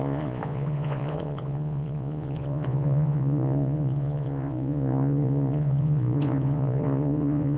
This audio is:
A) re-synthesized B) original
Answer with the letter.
A